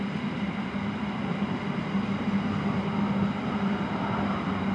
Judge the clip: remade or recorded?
recorded